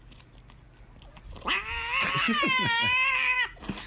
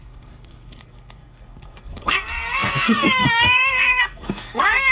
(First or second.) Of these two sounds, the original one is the first